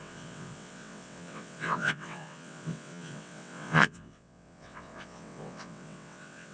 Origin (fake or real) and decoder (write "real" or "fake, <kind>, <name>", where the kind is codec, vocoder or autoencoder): fake, vocoder, WaveNeXt